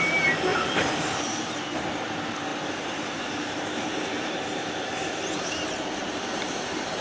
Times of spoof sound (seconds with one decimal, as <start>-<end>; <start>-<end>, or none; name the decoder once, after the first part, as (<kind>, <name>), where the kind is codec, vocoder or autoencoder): 0.5-1.5 (vocoder, BigVGAN v2); 2.5-7.0